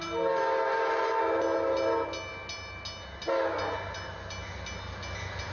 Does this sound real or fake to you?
real